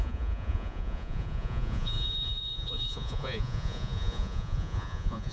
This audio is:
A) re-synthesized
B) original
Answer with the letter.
A